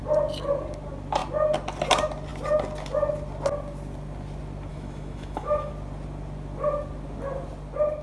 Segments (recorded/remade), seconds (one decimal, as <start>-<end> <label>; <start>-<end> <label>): 0.0-4.7 recorded; 4.7-5.7 remade; 5.7-8.0 recorded

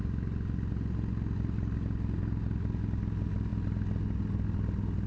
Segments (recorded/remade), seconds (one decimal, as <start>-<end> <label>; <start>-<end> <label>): 0.0-5.1 recorded

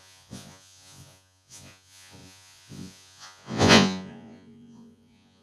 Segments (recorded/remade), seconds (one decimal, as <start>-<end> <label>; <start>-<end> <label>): 0.0-5.4 remade

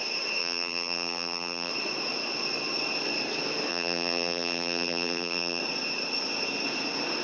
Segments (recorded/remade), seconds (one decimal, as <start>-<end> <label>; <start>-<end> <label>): 0.0-0.4 recorded; 0.4-1.7 remade; 1.7-3.7 recorded; 3.7-5.6 remade; 5.6-7.2 recorded

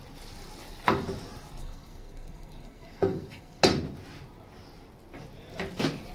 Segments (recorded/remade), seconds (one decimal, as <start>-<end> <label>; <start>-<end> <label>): 0.0-1.6 recorded; 1.6-3.6 remade; 3.6-6.1 recorded

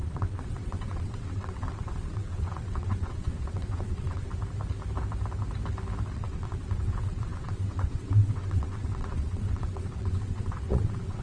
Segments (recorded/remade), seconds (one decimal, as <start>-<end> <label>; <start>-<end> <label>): 0.0-4.3 remade; 4.3-6.1 recorded; 6.1-11.2 remade

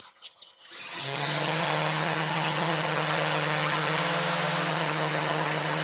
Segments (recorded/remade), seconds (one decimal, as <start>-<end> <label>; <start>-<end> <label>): 0.0-4.0 remade; 4.0-4.7 recorded; 4.7-5.8 remade

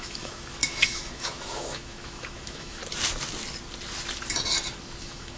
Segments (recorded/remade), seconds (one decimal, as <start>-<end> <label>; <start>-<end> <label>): 0.0-2.8 remade; 2.8-5.0 recorded; 5.0-5.4 remade